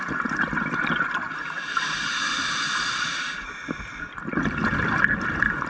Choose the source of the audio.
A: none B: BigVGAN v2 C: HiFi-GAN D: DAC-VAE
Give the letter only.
A